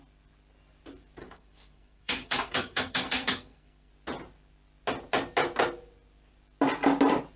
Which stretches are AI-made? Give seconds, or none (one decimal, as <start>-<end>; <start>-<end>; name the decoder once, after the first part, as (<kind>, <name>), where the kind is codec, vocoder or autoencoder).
1.2-3.9 (codec, SNAC)